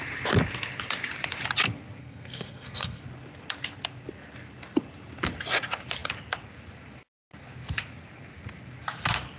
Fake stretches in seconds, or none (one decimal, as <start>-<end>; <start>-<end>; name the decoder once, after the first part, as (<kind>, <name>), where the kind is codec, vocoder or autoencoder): 2.0-3.0 (codec, SNAC)